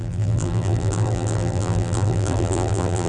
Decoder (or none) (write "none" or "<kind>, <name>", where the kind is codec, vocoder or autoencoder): vocoder, BigVGAN v2